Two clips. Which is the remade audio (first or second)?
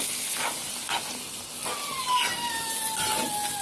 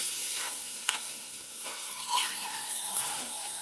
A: second